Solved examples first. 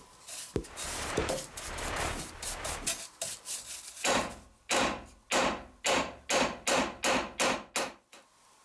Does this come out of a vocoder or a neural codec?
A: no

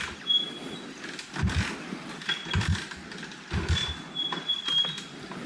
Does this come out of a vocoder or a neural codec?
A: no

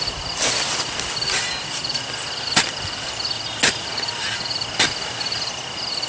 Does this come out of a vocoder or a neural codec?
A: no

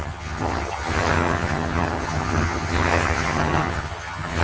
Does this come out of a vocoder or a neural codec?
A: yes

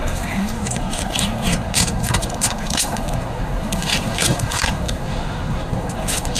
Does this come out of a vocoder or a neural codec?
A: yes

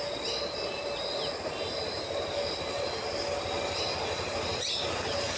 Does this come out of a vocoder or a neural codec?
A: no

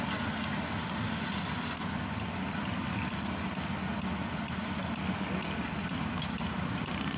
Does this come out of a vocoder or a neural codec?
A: no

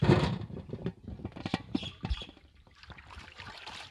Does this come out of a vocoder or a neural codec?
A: yes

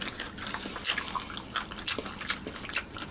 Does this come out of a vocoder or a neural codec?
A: no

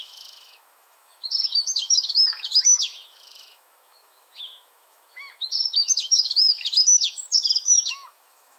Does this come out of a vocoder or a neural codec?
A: yes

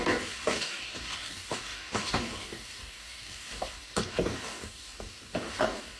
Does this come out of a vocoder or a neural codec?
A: yes